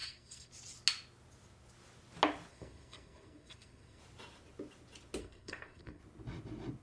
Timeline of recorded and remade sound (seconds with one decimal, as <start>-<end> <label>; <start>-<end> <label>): 0.0-0.5 remade; 0.5-2.5 recorded; 2.5-4.0 remade; 4.0-5.2 recorded; 5.2-6.0 remade; 6.0-6.8 recorded